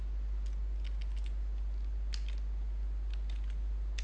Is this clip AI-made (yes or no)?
no